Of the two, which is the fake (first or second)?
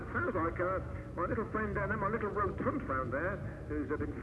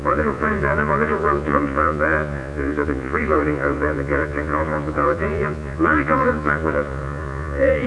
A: second